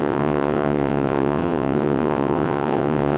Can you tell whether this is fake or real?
fake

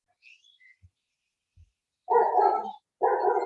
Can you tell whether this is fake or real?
real